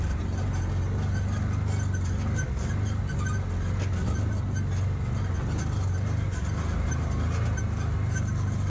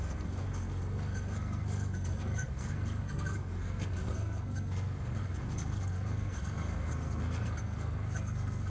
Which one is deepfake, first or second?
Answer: second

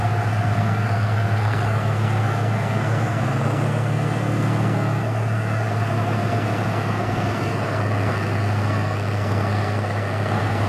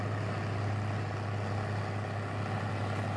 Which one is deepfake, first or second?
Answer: first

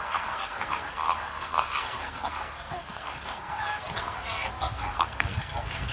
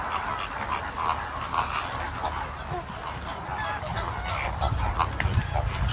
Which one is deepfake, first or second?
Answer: first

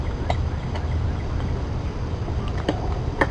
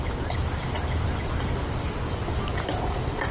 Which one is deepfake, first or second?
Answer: first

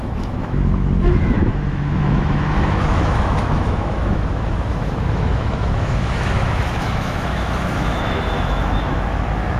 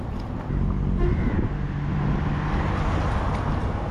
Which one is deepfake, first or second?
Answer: first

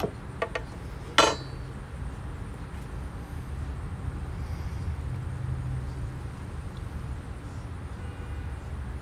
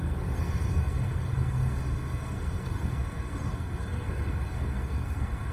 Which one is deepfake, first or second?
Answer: second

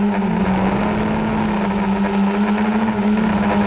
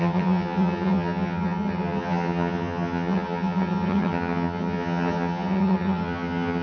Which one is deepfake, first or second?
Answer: second